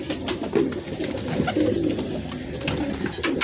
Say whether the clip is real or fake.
real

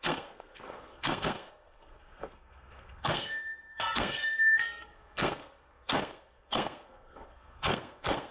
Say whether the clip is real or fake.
fake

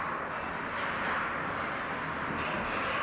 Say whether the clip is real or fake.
real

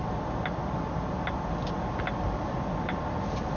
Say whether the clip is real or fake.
real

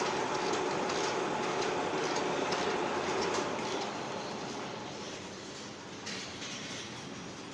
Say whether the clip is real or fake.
real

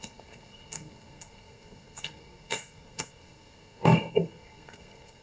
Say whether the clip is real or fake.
fake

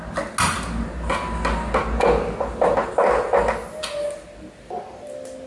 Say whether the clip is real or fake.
real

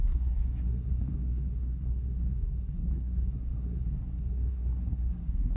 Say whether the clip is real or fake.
fake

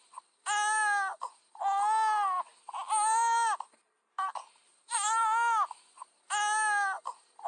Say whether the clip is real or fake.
real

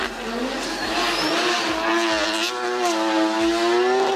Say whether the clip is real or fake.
real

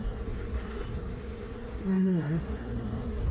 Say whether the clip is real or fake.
fake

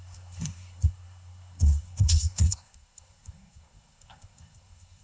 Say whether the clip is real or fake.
fake